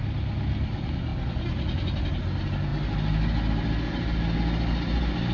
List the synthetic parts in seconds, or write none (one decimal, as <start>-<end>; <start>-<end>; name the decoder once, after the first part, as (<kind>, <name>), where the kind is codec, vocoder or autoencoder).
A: none